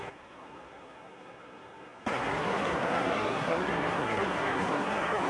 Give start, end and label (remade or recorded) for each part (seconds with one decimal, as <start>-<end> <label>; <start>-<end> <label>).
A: 0.0-5.3 remade